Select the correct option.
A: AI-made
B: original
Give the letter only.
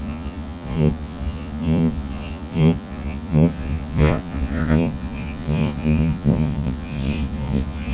A